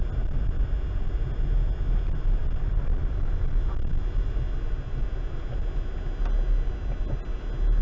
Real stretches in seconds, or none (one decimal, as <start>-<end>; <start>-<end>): 0.0-7.8